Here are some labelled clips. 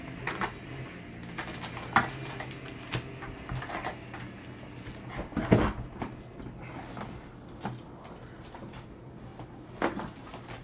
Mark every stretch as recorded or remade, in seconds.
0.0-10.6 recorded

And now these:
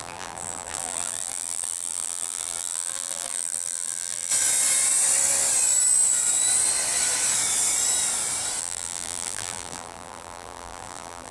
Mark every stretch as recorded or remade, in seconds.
0.0-4.3 remade; 4.3-8.6 recorded; 8.6-11.3 remade